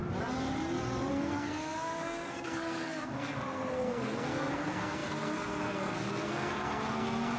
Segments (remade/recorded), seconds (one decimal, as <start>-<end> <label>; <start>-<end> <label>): 0.0-1.1 recorded; 1.1-7.4 remade